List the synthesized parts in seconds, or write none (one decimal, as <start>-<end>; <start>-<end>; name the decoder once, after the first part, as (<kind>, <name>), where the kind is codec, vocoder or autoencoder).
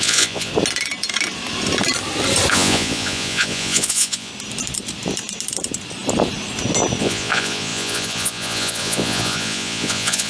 0.0-0.5 (vocoder, Vocos); 2.5-4.3; 7.0-10.3